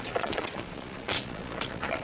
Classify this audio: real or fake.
fake